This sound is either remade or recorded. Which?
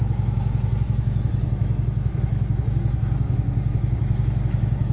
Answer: remade